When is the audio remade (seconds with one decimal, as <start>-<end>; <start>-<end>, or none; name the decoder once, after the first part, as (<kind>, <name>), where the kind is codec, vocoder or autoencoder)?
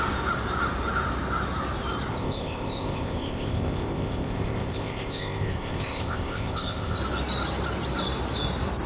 2.1-7.0 (codec, ZipCodec)